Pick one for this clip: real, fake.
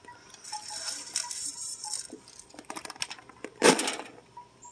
real